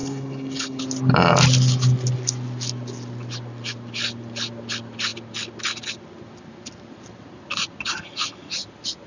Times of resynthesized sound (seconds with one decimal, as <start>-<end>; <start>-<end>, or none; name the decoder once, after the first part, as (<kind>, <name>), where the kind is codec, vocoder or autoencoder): 0.0-0.8 (codec, HILCodec)